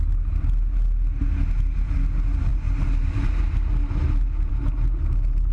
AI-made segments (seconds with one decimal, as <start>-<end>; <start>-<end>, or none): none